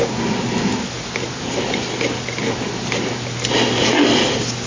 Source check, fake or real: real